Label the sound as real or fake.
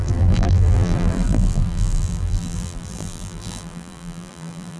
fake